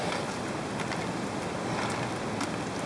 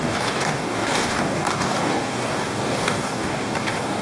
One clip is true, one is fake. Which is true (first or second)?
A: first